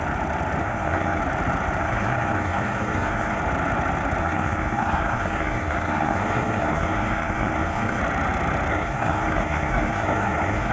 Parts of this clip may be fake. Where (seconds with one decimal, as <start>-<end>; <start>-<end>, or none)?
0.6-1.2; 1.8-3.4; 4.2-8.0; 8.7-10.7